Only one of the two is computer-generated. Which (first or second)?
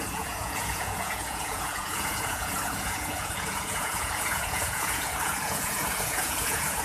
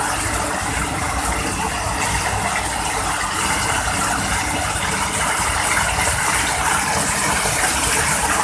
first